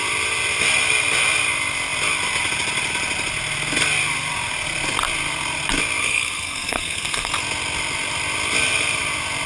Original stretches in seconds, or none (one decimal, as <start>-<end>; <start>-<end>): 0.0-6.0; 7.3-9.5